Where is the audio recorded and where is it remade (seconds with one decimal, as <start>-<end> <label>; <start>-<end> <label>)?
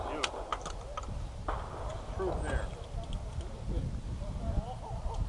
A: 0.0-5.3 recorded